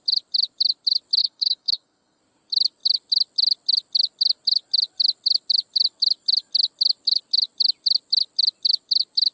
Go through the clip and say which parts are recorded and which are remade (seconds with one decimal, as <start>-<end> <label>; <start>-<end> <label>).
0.0-1.2 recorded; 1.2-2.2 remade; 2.2-9.3 recorded